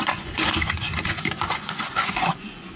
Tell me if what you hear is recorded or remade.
remade